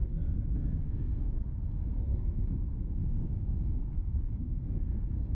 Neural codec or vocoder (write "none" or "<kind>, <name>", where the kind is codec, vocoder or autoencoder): codec, SNAC